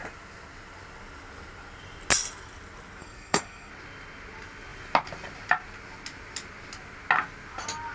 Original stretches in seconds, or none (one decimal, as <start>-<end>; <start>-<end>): 0.0-3.0; 3.7-7.9